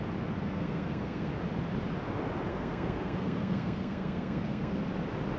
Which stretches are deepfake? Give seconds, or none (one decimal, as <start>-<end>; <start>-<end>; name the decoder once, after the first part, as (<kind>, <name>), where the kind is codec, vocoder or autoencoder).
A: 0.4-1.3 (codec, SNAC); 2.5-4.8